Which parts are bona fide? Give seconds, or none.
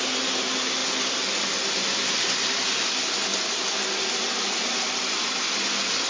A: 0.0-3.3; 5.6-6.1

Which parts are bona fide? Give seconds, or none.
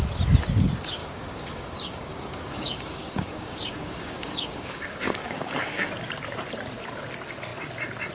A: 0.0-1.0; 5.9-8.1